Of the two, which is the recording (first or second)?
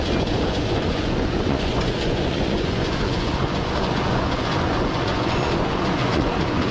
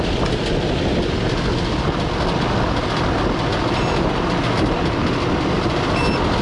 second